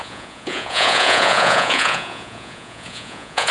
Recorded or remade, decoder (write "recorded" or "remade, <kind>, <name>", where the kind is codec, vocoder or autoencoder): remade, vocoder, Vocos